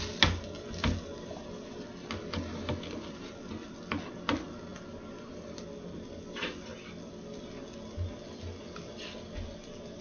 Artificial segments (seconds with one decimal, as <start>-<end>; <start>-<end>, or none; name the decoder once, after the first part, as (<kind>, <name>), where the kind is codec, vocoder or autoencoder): none